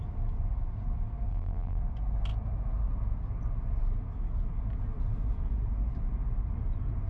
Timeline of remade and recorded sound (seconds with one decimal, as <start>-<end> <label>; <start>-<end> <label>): 0.0-1.3 recorded; 1.3-1.8 remade; 1.8-7.1 recorded